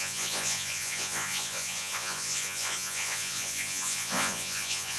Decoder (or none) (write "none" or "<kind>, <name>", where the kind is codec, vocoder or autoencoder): vocoder, Vocos